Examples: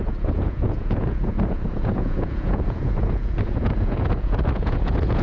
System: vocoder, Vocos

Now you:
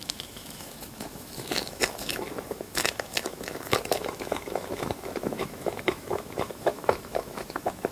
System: autoencoder, DAC-VAE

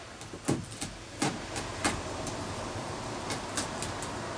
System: none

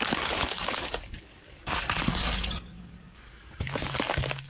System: codec, DAC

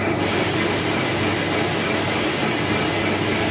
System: none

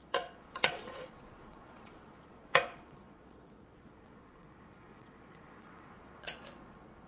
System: vocoder, Vocos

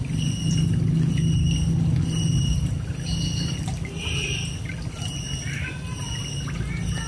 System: none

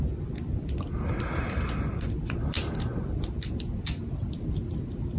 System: vocoder, BigVGAN v2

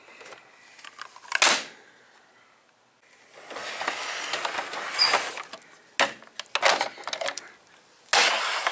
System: none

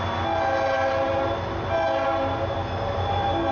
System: none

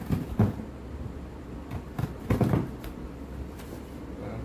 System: vocoder, BigVGAN v2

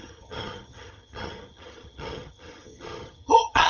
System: vocoder, HiFi-GAN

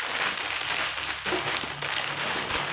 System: none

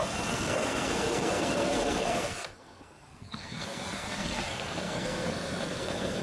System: codec, SNAC